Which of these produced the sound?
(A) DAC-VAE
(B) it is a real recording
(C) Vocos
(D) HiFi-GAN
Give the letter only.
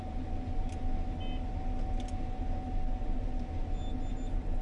B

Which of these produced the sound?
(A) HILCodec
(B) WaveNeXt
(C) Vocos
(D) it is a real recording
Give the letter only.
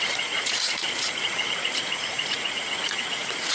C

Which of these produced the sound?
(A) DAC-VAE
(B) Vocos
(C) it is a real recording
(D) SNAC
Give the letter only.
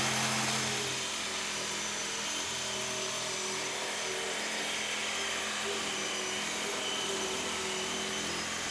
C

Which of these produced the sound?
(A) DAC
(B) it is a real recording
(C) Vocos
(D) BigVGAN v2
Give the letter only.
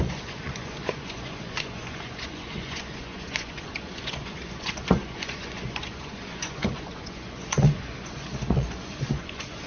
C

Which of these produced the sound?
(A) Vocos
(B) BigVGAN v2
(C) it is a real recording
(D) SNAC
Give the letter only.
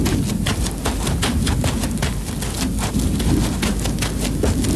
C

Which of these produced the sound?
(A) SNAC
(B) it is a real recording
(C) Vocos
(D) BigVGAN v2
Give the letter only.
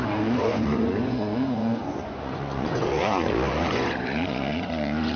C